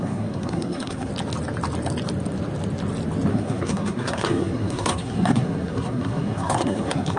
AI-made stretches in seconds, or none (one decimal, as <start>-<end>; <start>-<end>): 0.0-1.1; 3.3-7.2